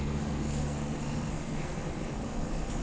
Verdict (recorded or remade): remade